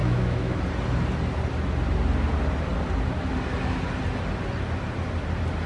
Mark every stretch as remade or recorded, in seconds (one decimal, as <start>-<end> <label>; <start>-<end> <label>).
0.0-0.6 remade; 0.6-5.7 recorded